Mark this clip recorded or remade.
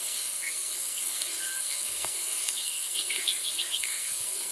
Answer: remade